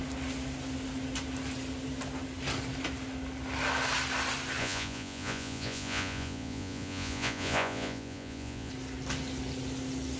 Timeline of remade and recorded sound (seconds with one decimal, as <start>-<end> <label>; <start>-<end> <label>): 0.0-4.6 recorded; 4.6-8.7 remade; 8.7-10.2 recorded

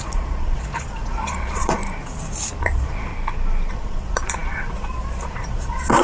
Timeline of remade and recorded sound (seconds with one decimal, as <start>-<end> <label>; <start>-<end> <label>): 0.0-1.8 remade; 1.8-2.6 recorded; 2.6-3.1 remade; 3.1-3.7 recorded; 3.7-6.0 remade

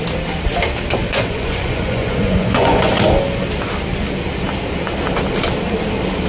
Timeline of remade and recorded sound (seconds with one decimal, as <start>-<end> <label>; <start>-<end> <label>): 0.0-1.0 recorded; 1.0-2.9 remade; 2.9-6.3 recorded

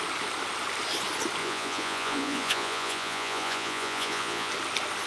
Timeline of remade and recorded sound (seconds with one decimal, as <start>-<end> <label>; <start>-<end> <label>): 0.0-1.4 recorded; 1.4-4.5 remade; 4.5-5.1 recorded